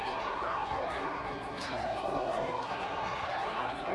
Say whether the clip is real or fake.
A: fake